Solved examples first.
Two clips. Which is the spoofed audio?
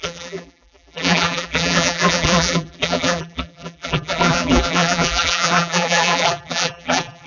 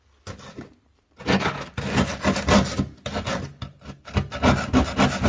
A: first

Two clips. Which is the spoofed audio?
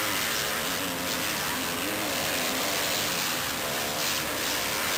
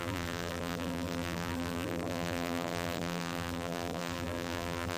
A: second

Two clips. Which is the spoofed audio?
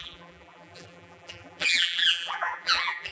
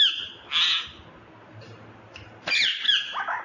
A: first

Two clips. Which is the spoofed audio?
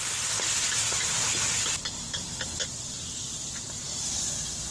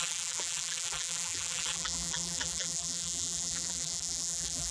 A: second